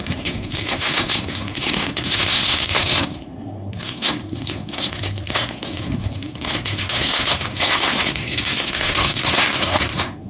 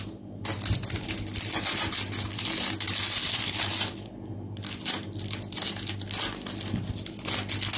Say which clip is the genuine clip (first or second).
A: second